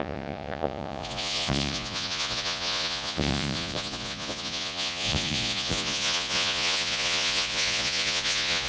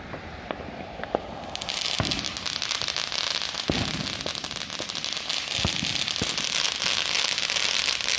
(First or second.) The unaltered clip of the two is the second